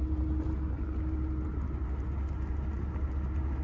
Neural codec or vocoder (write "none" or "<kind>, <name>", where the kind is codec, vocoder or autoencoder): none